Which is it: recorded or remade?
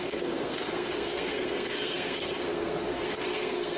remade